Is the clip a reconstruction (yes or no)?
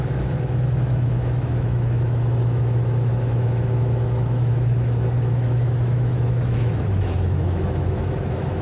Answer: yes